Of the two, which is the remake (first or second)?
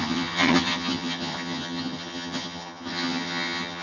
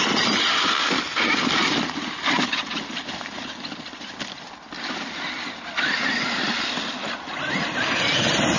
first